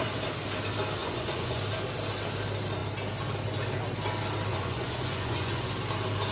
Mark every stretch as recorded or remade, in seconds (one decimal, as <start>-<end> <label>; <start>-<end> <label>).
0.0-1.0 recorded; 1.0-1.6 remade; 1.6-4.5 recorded; 4.5-5.7 remade; 5.7-6.3 recorded